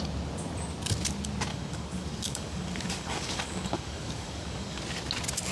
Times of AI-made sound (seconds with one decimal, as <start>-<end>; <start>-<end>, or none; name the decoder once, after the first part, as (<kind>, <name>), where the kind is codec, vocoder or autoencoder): 1.5-4.8 (codec, DAC)